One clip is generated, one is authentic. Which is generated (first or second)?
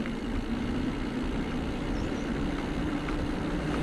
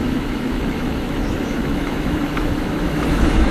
second